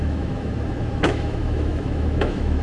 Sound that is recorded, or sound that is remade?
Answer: remade